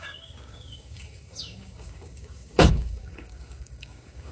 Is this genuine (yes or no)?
no